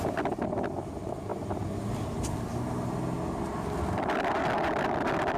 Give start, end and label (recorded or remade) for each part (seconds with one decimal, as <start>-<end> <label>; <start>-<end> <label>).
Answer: 0.0-5.4 recorded